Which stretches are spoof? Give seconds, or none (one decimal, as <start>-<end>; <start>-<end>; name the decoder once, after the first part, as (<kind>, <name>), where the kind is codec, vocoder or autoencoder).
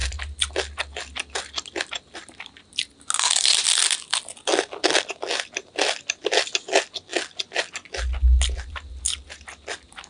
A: none